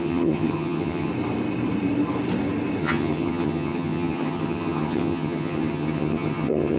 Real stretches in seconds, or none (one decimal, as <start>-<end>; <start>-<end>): 1.1-2.8